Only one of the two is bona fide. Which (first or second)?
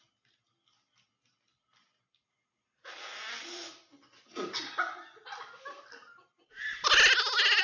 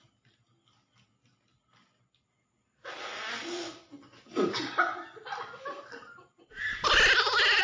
first